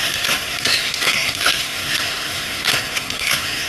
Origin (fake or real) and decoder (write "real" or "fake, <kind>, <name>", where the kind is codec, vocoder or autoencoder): fake, codec, SNAC